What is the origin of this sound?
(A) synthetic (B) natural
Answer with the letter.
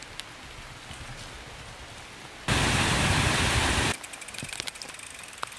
B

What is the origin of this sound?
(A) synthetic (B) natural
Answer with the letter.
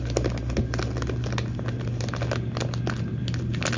B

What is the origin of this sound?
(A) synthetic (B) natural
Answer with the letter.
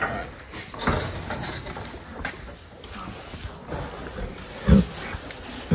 B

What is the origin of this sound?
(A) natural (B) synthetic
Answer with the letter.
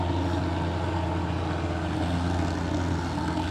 A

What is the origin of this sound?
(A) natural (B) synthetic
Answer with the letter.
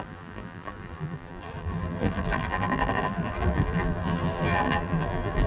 B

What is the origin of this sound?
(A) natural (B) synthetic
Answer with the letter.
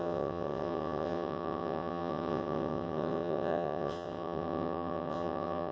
B